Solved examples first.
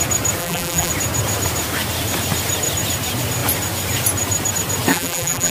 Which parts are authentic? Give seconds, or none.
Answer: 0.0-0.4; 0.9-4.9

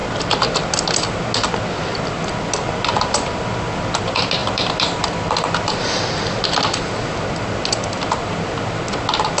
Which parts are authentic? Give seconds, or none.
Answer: 0.0-4.4; 6.4-9.4

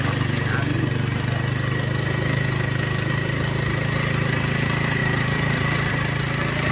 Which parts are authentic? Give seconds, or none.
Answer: 0.0-5.0; 5.9-6.7

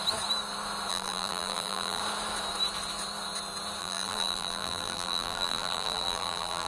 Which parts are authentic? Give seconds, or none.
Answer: 0.0-0.9; 2.0-3.8